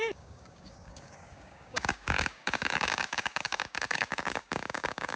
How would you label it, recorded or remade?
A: remade